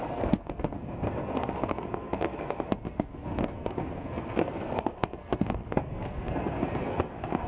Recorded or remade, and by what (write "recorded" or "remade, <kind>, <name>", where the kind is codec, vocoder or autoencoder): remade, codec, SNAC